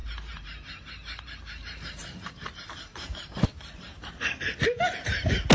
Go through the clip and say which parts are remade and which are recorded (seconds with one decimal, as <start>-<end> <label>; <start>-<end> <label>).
0.0-2.3 remade; 2.3-2.9 recorded; 2.9-4.4 remade; 4.4-5.5 recorded

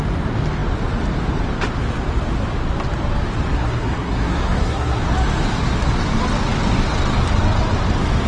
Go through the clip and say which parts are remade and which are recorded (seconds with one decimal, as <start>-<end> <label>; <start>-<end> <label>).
0.0-3.5 recorded; 3.5-5.0 remade; 5.0-8.3 recorded

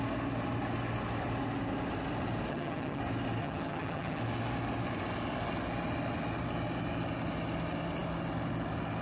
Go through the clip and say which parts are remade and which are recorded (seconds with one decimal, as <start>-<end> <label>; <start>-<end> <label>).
0.0-2.5 recorded; 2.5-3.0 remade; 3.0-3.4 recorded; 3.4-4.2 remade; 4.2-9.0 recorded

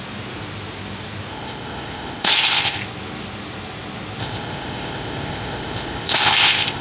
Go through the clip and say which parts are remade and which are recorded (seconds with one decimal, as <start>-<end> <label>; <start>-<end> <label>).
0.0-1.3 recorded; 1.3-2.8 remade; 2.8-4.2 recorded; 4.2-6.8 remade

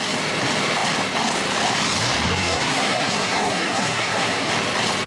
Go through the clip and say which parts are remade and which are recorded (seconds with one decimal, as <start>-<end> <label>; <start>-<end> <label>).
0.0-2.3 recorded; 2.3-4.5 remade; 4.5-5.1 recorded